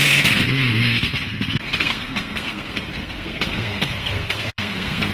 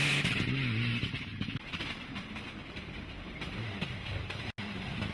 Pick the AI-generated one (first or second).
first